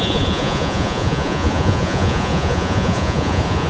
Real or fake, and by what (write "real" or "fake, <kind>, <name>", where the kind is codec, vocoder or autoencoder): fake, vocoder, Vocos